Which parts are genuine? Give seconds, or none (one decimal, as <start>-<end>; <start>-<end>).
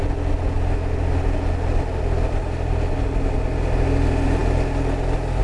0.0-5.4